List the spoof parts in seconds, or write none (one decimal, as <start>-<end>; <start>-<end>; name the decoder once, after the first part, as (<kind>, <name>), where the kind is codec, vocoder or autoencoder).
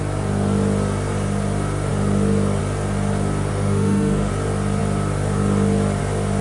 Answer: 3.5-4.3 (autoencoder, DAC-VAE)